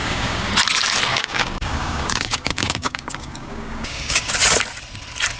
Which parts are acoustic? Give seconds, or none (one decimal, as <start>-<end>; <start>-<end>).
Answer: 0.5-1.1; 4.3-5.4